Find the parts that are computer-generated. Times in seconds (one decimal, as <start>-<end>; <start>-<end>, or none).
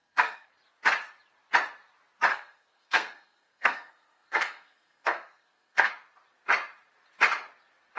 0.0-0.5; 2.3-5.9